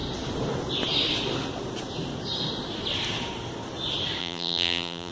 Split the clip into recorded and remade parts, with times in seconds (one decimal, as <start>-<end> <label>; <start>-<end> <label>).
0.0-4.2 recorded; 4.2-5.1 remade